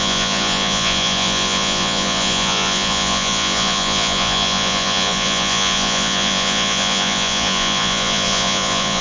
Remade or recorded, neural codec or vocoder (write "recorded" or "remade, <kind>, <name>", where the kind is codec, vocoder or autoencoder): remade, vocoder, Vocos